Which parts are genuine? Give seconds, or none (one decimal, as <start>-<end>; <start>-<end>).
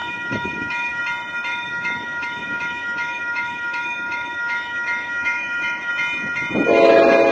1.0-1.5; 5.9-7.3